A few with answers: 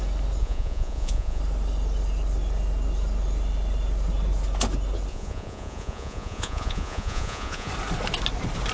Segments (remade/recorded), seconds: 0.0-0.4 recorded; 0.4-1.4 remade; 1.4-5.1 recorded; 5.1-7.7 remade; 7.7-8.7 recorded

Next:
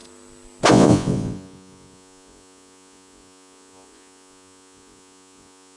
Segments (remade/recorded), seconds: 0.0-0.7 recorded; 0.7-5.8 remade

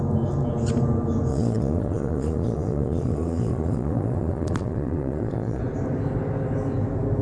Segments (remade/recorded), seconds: 0.0-1.3 recorded; 1.3-5.6 remade; 5.6-7.2 recorded

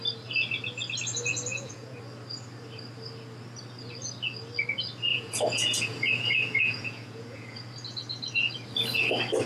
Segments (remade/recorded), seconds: 0.0-1.5 recorded; 1.5-2.0 remade; 2.0-5.1 recorded; 5.1-7.6 remade; 7.6-9.5 recorded

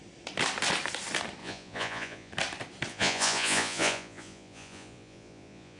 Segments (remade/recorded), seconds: 0.0-1.4 recorded; 1.4-2.3 remade; 2.3-2.9 recorded; 2.9-5.8 remade

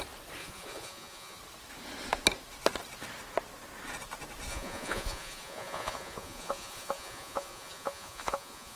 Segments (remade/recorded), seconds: 0.0-0.4 recorded; 0.4-1.4 remade; 1.4-4.5 recorded; 4.5-8.8 remade

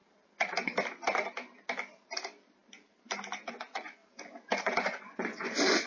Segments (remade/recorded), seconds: 0.0-3.5 recorded; 3.5-4.0 remade; 4.0-4.6 recorded; 4.6-5.9 remade